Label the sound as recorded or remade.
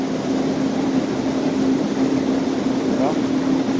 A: recorded